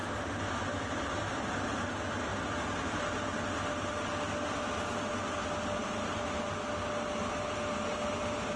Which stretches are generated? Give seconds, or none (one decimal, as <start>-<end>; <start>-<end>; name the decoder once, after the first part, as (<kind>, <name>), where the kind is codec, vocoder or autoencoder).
0.0-1.9 (vocoder, BigVGAN v2)